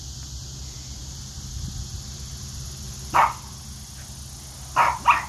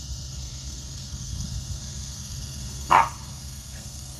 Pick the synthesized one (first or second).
second